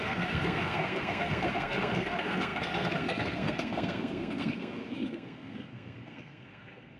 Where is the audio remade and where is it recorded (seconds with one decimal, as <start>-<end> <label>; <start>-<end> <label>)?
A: 0.0-7.0 remade